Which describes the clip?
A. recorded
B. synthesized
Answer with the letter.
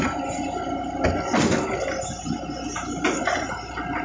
A